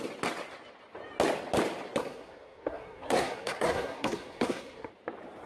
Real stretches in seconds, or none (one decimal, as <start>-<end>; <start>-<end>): 0.0-2.0; 4.9-5.5